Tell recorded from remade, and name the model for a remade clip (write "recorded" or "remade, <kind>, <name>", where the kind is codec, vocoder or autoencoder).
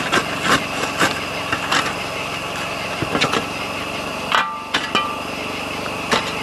recorded